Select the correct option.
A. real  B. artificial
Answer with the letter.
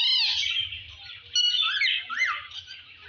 A